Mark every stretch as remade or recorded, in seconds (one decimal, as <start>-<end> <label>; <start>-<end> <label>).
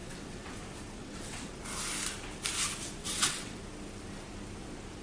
0.0-0.6 remade; 0.6-1.0 recorded; 1.0-1.5 remade; 1.5-3.0 recorded; 3.0-3.6 remade; 3.6-5.0 recorded